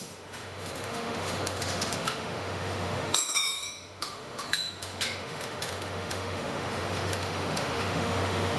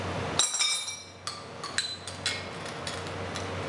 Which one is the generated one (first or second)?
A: first